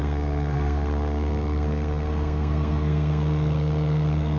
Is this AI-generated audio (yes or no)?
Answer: yes